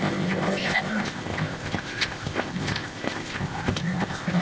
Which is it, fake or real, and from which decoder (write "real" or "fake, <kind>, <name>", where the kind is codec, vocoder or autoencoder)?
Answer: fake, codec, ZipCodec